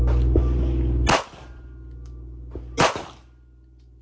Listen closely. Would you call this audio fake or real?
real